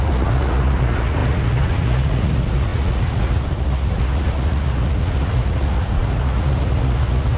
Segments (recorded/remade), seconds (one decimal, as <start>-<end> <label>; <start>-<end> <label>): 0.0-7.4 remade